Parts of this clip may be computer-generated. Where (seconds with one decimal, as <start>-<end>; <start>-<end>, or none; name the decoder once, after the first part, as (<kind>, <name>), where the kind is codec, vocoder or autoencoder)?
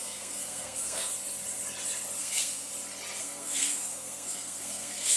0.0-1.1 (codec, SNAC); 2.2-2.7; 3.2-5.2